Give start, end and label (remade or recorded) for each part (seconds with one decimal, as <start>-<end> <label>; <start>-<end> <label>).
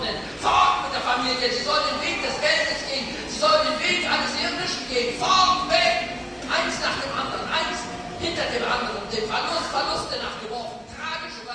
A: 0.0-11.5 recorded